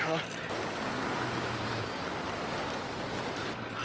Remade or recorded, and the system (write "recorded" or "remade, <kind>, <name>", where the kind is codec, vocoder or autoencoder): recorded